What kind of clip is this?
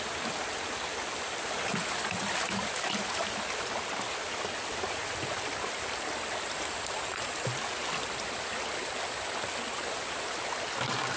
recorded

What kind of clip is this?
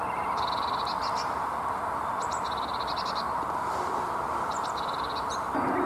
recorded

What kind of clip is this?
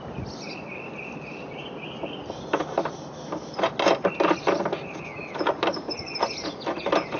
recorded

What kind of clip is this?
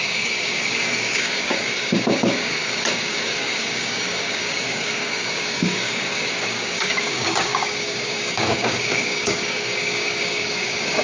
remade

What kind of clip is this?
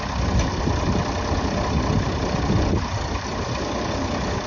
recorded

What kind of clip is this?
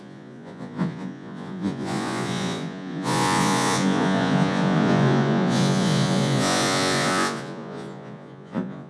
remade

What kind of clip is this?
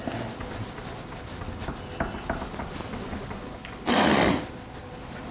recorded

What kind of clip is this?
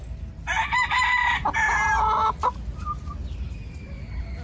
recorded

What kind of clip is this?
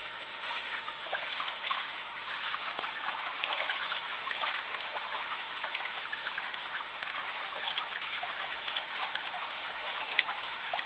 remade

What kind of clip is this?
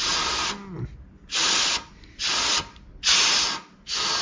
recorded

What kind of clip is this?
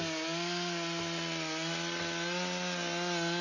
recorded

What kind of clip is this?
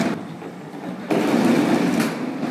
recorded